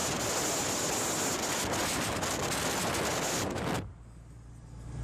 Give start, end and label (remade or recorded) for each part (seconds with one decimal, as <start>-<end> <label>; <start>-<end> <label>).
0.0-5.0 recorded